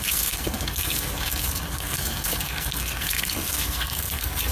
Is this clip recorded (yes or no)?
no